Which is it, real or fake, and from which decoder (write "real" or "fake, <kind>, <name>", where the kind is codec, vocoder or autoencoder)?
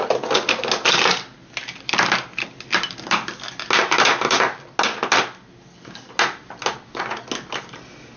real